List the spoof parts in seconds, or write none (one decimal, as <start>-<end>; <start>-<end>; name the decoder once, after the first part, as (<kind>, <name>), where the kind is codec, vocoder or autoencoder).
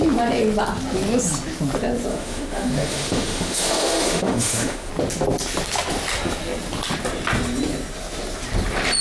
2.1-4.9 (autoencoder, DAC-VAE)